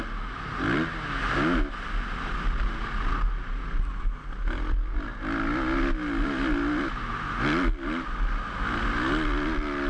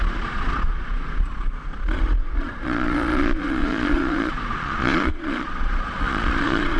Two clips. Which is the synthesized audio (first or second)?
second